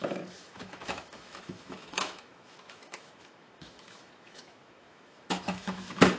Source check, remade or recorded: remade